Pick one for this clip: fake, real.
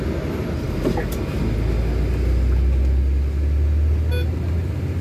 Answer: real